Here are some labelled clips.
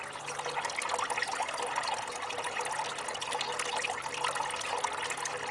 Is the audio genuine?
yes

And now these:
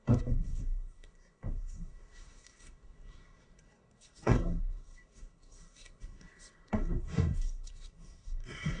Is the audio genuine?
no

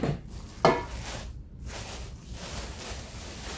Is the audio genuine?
yes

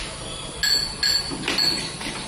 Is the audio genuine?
yes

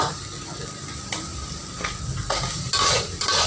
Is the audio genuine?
yes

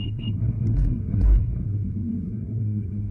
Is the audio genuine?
no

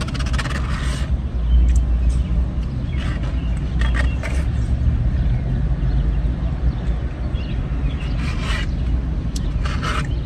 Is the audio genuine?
yes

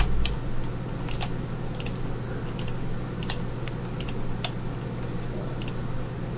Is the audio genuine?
yes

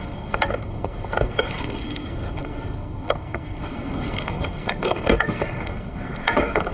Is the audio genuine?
no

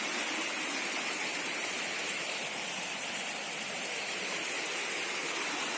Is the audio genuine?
yes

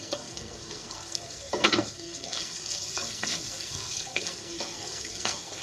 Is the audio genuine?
no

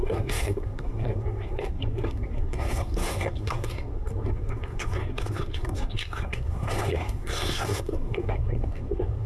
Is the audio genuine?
no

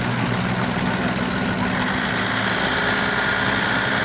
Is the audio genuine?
yes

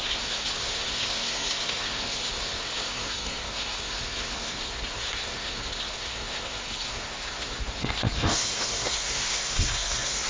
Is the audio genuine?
no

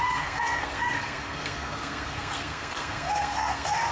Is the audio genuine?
no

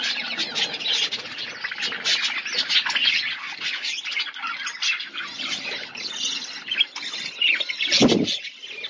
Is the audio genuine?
yes